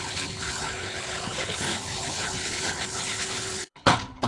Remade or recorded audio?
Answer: remade